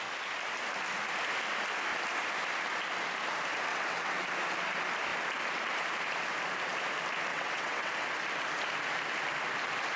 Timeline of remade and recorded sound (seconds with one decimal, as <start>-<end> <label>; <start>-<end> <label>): 0.0-3.7 recorded; 3.7-4.2 remade; 4.2-7.3 recorded; 7.3-7.9 remade; 7.9-10.0 recorded